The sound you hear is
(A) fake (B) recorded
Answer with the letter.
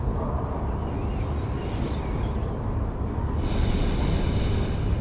B